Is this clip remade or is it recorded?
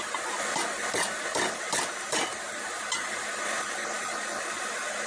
recorded